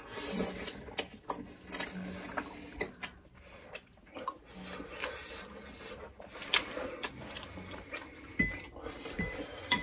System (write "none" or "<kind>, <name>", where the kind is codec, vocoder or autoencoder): none